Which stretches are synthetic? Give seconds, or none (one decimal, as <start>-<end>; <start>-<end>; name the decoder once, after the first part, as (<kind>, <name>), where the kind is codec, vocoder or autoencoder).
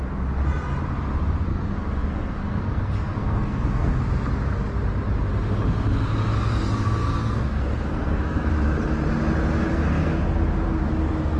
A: 1.5-4.0 (codec, SNAC); 7.0-8.5; 9.7-10.2